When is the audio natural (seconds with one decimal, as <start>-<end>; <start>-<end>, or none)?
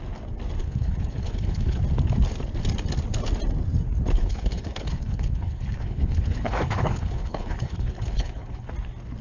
0.0-0.6; 1.8-4.2; 8.7-9.2